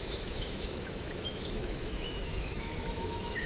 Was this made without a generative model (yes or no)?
no